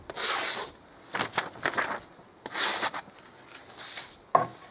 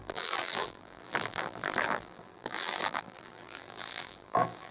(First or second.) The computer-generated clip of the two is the second